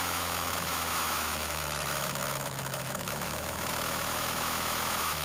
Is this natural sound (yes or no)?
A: no